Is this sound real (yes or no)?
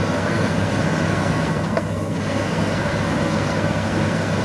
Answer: no